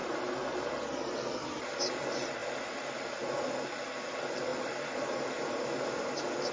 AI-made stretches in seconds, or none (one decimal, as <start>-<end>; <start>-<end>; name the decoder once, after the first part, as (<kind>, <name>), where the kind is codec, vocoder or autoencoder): 0.0-0.7 (vocoder, BigVGAN v2); 4.5-6.1

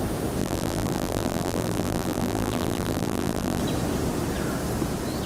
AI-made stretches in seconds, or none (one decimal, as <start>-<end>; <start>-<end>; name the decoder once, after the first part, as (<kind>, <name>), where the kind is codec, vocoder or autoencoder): 0.4-3.6 (vocoder, BigVGAN v2)

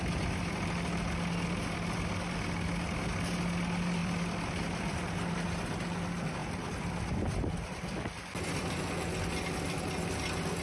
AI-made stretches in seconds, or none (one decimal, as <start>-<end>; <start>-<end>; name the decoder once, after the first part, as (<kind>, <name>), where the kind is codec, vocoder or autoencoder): 4.0-5.3 (vocoder, BigVGAN v2); 6.4-8.8

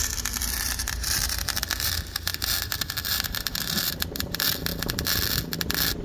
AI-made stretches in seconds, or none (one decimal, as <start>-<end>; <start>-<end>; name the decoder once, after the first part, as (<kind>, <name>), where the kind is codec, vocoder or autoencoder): 0.0-2.3 (vocoder, BigVGAN v2); 3.0-4.7

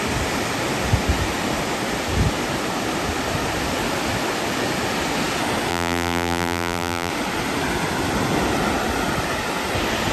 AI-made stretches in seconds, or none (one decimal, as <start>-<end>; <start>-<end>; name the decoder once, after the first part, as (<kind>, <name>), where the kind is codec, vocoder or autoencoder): 5.7-7.1 (vocoder, BigVGAN v2)

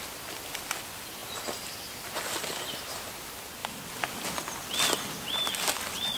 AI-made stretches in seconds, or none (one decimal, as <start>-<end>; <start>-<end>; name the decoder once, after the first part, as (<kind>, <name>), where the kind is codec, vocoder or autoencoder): 3.6-4.7 (vocoder, BigVGAN v2)

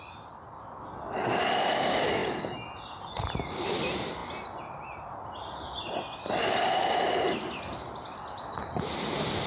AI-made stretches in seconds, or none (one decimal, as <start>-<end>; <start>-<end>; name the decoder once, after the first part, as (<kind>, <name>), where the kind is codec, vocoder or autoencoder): none

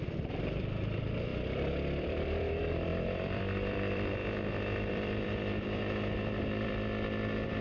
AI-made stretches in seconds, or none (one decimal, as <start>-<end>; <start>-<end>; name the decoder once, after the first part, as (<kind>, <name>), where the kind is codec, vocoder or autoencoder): 0.0-1.3 (vocoder, BigVGAN v2); 2.0-4.2; 4.9-7.6